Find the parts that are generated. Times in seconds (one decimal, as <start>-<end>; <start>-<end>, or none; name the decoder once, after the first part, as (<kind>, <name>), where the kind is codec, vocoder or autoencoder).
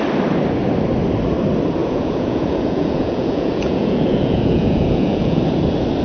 1.8-5.4 (vocoder, Vocos)